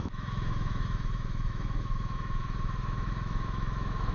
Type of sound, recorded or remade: remade